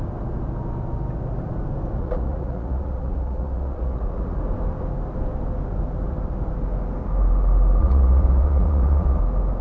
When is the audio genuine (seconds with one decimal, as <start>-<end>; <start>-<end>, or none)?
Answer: 0.0-2.0; 4.4-7.8; 9.2-9.6